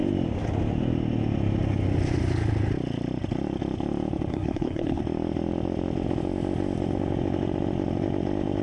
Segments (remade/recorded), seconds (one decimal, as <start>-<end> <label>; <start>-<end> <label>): 0.0-4.3 recorded; 4.3-5.0 remade; 5.0-8.6 recorded